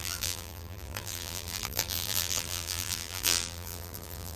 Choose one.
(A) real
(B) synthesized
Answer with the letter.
B